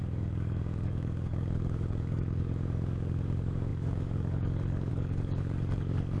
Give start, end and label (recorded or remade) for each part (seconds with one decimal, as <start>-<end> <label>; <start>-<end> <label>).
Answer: 0.0-6.2 remade

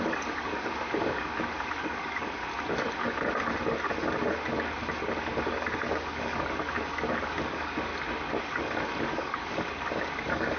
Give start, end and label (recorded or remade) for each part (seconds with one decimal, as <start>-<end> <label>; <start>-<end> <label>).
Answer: 0.0-2.4 remade; 2.4-5.0 recorded; 5.0-7.9 remade; 7.9-8.4 recorded; 8.4-10.6 remade